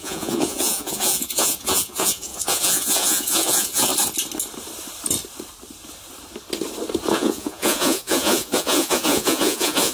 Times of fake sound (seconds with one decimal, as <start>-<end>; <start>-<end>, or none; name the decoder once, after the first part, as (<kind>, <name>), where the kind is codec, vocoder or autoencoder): 0.0-3.9 (vocoder, Vocos); 7.1-9.9